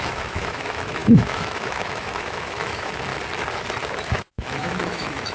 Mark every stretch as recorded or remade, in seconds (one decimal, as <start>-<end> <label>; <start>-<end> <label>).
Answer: 0.0-3.1 remade; 3.1-3.9 recorded; 3.9-5.3 remade